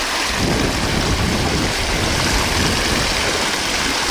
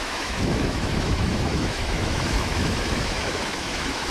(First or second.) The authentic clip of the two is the first